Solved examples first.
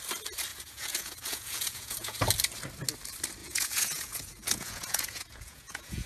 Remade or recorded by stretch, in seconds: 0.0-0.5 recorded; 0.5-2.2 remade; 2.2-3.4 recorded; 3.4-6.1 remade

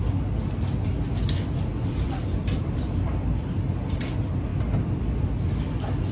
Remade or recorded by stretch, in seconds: 0.0-1.7 recorded; 1.7-3.1 remade; 3.1-6.1 recorded

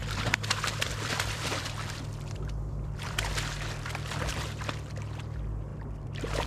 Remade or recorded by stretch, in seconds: 0.0-3.3 remade; 3.3-5.7 recorded; 5.7-6.5 remade